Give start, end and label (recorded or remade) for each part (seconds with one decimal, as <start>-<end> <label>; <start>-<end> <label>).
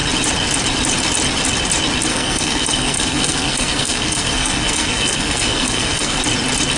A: 0.0-2.1 recorded; 2.1-6.2 remade; 6.2-6.8 recorded